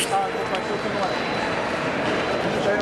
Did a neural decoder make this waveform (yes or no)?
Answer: no